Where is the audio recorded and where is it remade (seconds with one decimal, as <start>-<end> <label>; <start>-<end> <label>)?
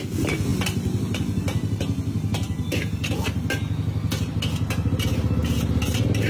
0.0-6.3 recorded